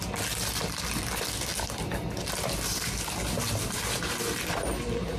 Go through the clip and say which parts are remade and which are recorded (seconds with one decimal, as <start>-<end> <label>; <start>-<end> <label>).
0.0-5.2 recorded